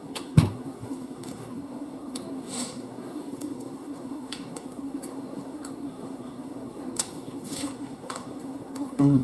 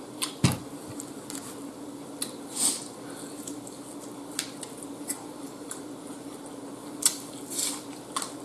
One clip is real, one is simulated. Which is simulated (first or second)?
first